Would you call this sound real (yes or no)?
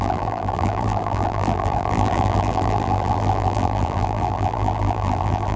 no